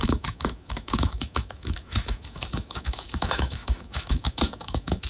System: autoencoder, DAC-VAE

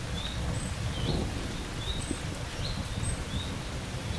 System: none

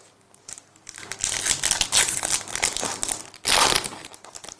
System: none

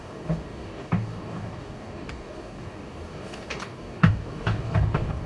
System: codec, DAC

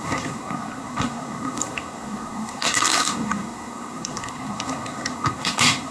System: codec, SNAC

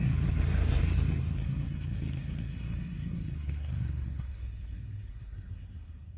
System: codec, SNAC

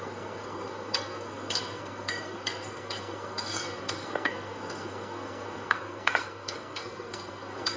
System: codec, SNAC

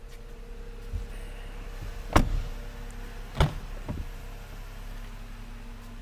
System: none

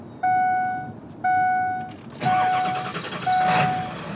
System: none